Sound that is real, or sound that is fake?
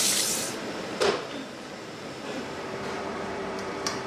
fake